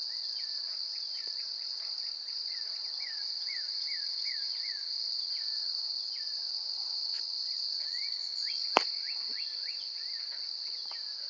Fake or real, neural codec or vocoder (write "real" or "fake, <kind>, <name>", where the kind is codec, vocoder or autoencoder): fake, vocoder, BigVGAN v2